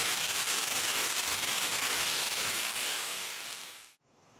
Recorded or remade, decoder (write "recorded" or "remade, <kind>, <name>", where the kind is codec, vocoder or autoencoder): remade, codec, DAC